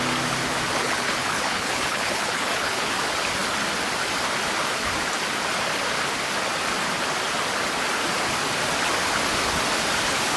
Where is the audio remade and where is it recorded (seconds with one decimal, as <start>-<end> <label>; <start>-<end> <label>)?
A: 0.0-0.7 recorded; 0.7-2.8 remade; 2.8-10.4 recorded